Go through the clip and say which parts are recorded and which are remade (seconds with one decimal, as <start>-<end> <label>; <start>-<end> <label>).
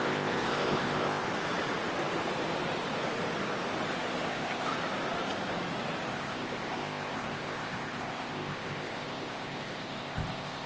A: 0.0-1.2 remade; 1.2-4.3 recorded; 4.3-4.7 remade; 4.7-6.1 recorded; 6.1-10.7 remade